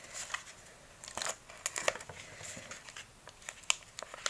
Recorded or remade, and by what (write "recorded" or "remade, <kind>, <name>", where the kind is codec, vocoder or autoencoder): recorded